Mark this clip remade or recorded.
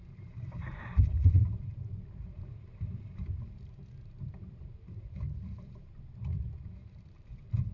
remade